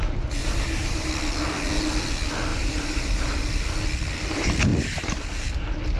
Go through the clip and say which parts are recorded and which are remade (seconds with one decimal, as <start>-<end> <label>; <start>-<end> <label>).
0.0-0.4 recorded; 0.4-1.1 remade; 1.1-2.5 recorded; 2.5-3.6 remade; 3.6-4.7 recorded; 4.7-5.3 remade; 5.3-6.0 recorded